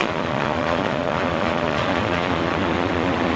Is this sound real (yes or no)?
no